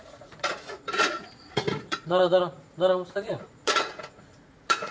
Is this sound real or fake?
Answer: fake